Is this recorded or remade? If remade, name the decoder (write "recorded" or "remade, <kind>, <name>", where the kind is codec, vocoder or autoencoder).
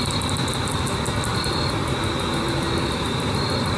recorded